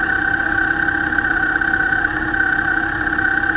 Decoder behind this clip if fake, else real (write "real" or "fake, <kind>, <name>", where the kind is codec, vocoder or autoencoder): real